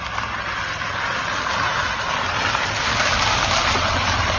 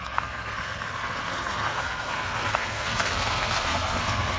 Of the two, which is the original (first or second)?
first